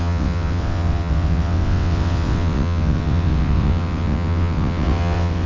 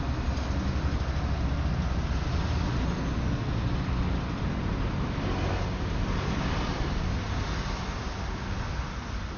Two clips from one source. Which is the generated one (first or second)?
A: first